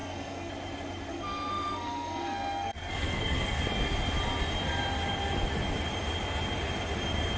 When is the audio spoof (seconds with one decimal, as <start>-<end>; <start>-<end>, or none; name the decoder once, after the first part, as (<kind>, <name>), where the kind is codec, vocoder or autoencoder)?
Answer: 0.0-0.5 (codec, SNAC); 1.1-3.6